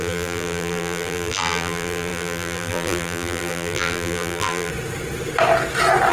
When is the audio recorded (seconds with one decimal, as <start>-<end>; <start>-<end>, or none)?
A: 4.7-6.1